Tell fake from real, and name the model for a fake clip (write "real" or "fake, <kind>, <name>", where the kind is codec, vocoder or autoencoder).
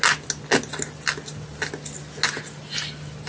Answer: real